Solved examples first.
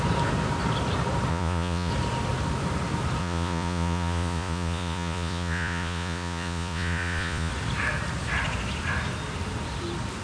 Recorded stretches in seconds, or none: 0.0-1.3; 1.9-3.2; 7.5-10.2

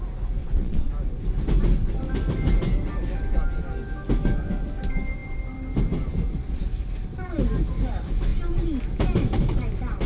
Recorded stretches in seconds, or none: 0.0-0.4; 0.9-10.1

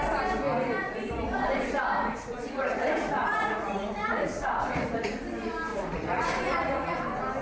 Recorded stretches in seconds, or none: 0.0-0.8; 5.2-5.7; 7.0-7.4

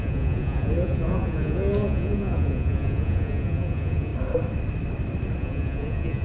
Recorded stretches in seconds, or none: 4.1-5.4

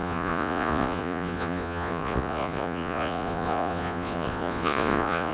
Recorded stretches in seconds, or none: none